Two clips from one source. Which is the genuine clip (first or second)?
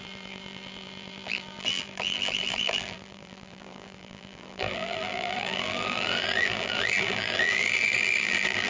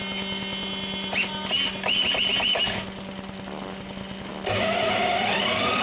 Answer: second